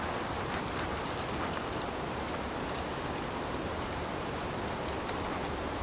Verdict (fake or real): real